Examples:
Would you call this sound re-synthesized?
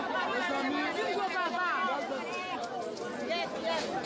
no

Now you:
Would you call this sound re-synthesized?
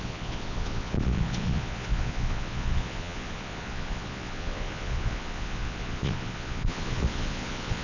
yes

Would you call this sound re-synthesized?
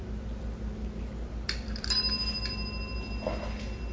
no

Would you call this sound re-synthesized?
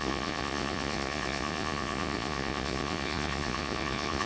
yes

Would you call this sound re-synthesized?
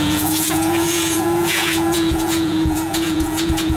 yes